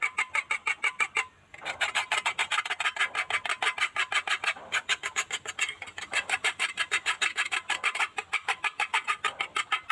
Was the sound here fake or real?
real